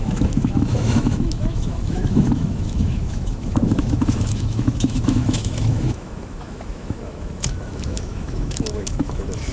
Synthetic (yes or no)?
yes